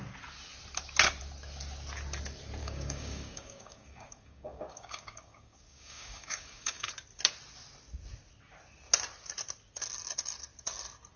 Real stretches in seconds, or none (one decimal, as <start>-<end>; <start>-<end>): 0.0-2.6; 6.9-11.2